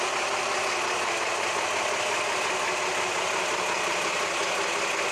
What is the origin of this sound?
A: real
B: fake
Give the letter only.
A